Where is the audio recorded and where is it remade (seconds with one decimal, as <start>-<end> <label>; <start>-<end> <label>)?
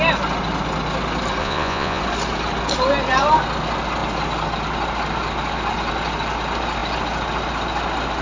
0.0-1.4 recorded; 1.4-2.0 remade; 2.0-8.2 recorded